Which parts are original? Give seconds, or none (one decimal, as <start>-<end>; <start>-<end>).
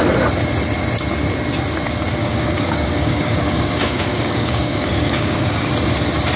0.0-2.2; 5.7-6.4